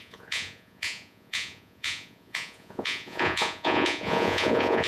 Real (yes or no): no